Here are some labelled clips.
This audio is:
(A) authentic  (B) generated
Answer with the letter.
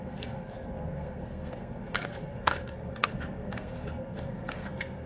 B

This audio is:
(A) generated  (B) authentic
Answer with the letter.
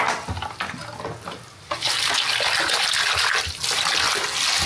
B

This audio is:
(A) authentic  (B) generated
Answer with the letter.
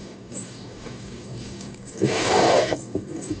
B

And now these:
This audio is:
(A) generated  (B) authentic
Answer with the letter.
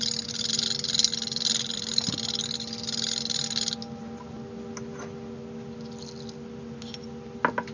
B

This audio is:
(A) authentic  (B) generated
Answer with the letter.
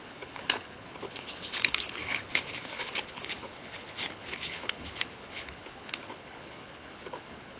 B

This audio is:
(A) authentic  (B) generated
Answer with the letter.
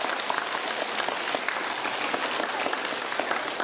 A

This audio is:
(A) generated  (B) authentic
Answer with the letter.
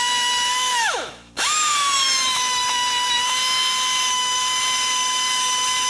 A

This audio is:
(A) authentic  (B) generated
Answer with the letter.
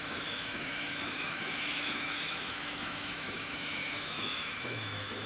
B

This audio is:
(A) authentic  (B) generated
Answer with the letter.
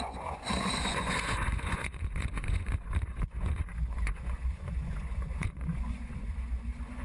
B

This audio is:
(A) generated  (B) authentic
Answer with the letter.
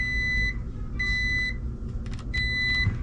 B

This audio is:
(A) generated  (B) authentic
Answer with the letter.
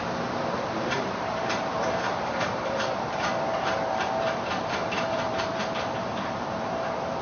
A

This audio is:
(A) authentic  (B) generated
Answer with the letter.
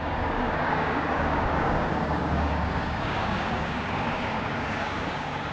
B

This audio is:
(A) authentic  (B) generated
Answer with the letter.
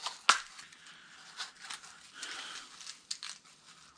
A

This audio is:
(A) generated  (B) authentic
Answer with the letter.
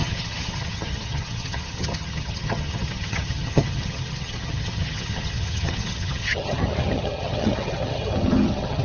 A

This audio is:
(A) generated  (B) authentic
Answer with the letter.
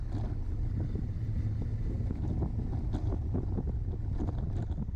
B